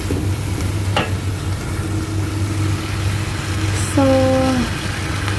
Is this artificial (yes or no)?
no